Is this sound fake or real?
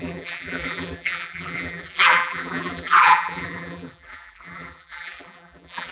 fake